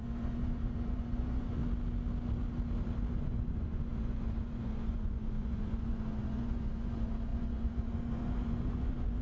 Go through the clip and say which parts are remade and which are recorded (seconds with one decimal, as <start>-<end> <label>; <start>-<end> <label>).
0.0-1.6 remade; 1.6-3.1 recorded; 3.1-9.2 remade